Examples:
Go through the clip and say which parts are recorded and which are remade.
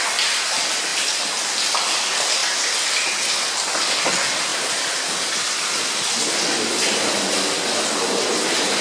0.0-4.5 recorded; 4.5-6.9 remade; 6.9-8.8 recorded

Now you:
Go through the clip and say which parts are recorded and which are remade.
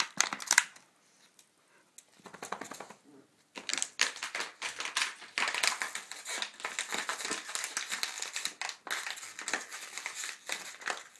0.0-11.2 recorded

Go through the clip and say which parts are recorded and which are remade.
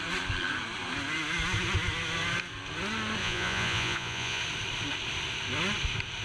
0.0-3.2 recorded; 3.2-4.4 remade; 4.4-6.2 recorded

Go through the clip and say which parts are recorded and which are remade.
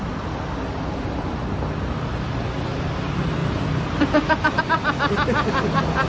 0.0-3.4 recorded; 3.4-4.6 remade; 4.6-6.1 recorded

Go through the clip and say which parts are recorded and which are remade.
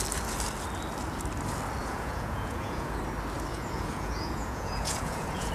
0.0-1.8 recorded; 1.8-3.0 remade; 3.0-3.5 recorded; 3.5-5.5 remade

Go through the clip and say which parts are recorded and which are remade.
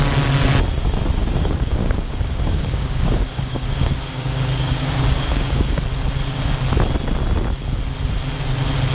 0.0-1.2 recorded; 1.2-5.8 remade; 5.8-8.9 recorded